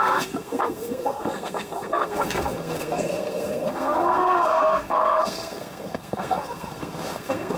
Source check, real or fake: fake